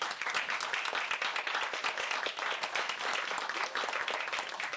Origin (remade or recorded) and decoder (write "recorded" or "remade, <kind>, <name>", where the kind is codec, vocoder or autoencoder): recorded